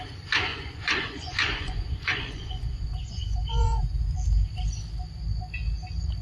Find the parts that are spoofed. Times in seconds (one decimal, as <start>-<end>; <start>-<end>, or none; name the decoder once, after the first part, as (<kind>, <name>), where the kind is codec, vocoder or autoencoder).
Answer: 0.5-4.0 (vocoder, Vocos)